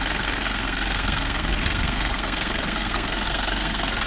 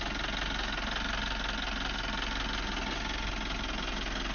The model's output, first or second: first